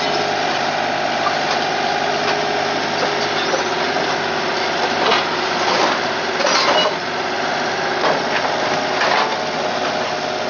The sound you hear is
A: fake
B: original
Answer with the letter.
B